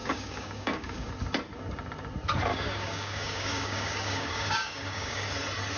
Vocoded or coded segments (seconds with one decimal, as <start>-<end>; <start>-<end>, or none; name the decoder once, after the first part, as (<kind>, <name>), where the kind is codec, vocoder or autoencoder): 0.0-1.1 (codec, DAC); 2.5-5.3